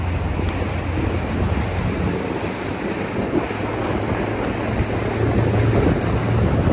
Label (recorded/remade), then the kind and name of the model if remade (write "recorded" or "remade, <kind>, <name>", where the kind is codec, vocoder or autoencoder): recorded